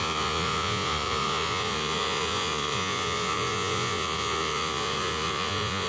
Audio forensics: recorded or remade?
remade